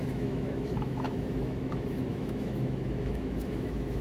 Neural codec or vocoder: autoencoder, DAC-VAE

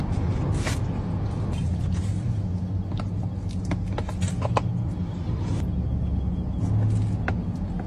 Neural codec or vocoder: none